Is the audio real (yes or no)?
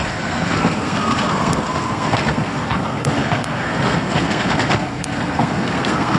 no